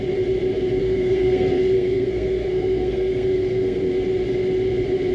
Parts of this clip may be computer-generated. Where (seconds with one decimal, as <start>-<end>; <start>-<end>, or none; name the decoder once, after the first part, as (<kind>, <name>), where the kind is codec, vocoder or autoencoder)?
0.8-3.9 (codec, SNAC)